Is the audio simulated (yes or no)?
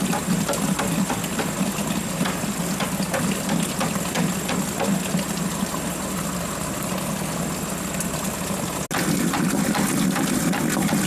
no